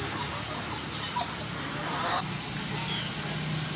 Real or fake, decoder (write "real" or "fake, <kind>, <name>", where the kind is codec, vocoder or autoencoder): real